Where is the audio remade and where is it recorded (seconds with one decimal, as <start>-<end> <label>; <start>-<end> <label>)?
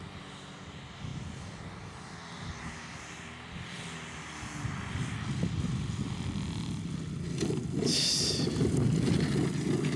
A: 0.0-10.0 recorded